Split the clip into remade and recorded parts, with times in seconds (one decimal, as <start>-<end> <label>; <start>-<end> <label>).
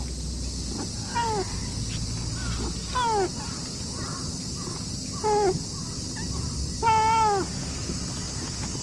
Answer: 0.0-8.8 recorded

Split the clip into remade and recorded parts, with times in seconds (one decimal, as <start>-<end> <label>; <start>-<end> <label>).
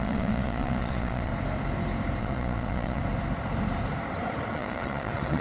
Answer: 0.0-1.3 remade; 1.3-2.2 recorded; 2.2-3.0 remade; 3.0-4.5 recorded; 4.5-5.4 remade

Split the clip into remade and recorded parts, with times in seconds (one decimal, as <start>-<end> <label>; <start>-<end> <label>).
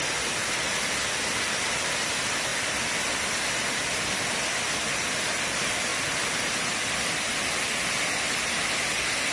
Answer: 0.0-9.3 recorded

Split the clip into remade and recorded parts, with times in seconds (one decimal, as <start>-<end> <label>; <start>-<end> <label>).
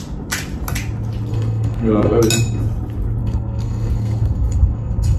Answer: 0.0-1.3 recorded; 1.3-2.2 remade; 2.2-3.2 recorded; 3.2-5.2 remade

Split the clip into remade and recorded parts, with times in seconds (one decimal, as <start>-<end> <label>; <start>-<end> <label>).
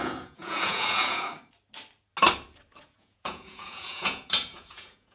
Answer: 0.0-1.3 remade; 1.3-2.8 recorded; 2.8-5.1 remade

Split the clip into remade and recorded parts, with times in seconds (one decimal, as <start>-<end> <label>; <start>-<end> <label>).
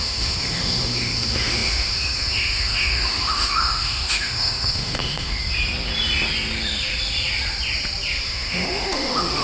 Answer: 0.0-5.4 remade; 5.4-8.2 recorded; 8.2-9.4 remade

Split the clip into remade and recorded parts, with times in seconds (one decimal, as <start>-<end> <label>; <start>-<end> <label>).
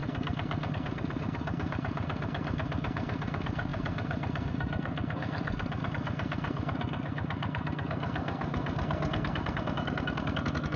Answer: 0.0-10.8 remade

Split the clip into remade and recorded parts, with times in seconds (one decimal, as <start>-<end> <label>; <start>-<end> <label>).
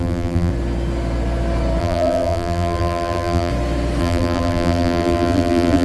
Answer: 0.0-0.5 remade; 0.5-1.8 recorded; 1.8-3.5 remade; 3.5-4.0 recorded; 4.0-5.8 remade